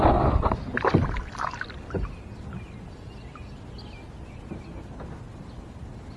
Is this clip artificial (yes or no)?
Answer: no